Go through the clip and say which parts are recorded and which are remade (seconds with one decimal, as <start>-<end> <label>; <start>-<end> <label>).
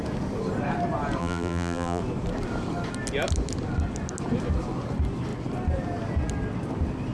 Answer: 0.0-1.2 recorded; 1.2-2.0 remade; 2.0-7.1 recorded